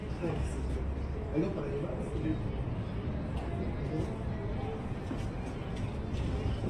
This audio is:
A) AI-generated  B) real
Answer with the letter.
B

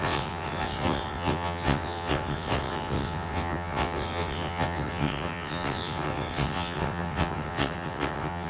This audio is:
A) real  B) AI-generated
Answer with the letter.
B